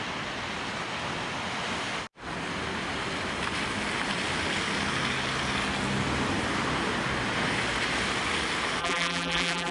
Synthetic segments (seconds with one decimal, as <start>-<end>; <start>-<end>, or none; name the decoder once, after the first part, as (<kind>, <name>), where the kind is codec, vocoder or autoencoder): 8.8-9.7 (vocoder, BigVGAN v2)